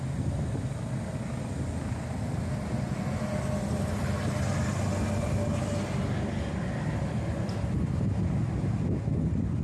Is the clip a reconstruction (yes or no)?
no